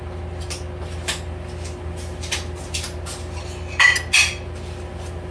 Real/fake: real